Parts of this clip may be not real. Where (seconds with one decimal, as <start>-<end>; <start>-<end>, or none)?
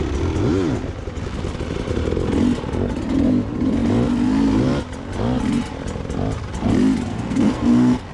7.1-8.1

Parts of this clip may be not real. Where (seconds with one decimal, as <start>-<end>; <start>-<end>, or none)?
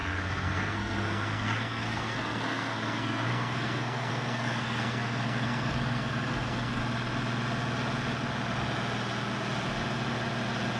0.0-6.8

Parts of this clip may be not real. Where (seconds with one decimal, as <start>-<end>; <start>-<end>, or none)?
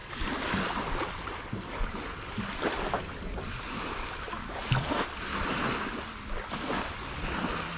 none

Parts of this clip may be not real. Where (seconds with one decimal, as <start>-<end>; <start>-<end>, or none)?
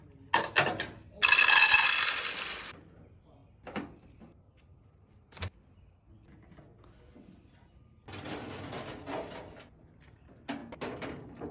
none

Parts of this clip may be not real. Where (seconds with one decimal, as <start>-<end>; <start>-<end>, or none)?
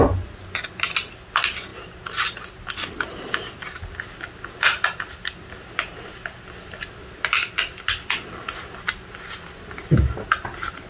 none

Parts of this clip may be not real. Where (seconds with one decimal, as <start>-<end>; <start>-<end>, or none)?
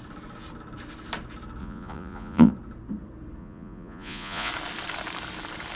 1.6-2.5; 3.4-4.5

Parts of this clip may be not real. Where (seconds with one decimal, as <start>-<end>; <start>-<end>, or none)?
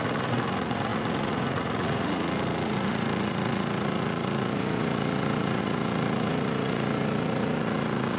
0.0-8.2